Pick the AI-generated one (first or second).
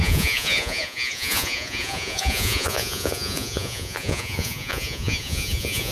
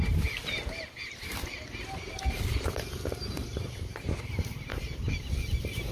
first